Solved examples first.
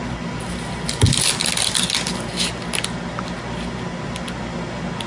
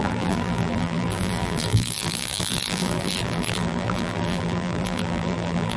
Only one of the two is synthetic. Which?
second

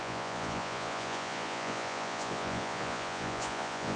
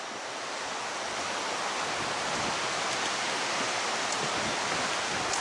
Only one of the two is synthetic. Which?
first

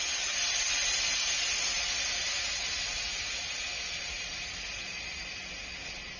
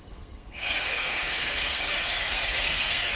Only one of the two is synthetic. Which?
second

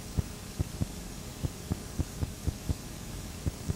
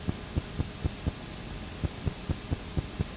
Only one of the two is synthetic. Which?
first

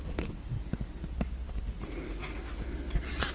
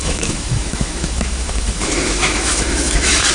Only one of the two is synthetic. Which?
second